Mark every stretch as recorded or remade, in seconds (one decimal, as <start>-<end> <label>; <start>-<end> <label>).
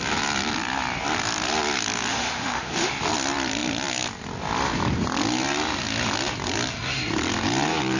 0.0-2.1 recorded; 2.1-2.9 remade; 2.9-8.0 recorded